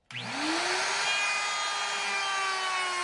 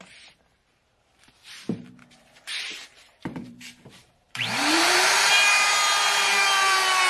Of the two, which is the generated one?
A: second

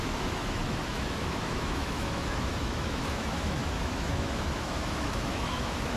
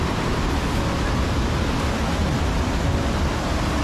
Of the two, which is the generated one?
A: first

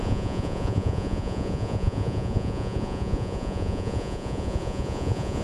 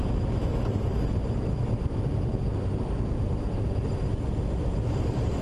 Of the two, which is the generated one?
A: first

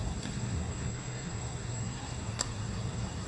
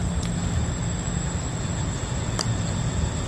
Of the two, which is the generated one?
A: first